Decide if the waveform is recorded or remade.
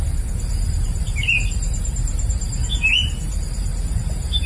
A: remade